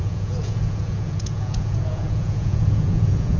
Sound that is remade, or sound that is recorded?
remade